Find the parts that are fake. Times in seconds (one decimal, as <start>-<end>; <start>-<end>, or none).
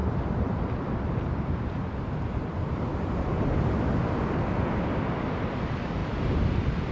0.0-4.1; 6.0-6.9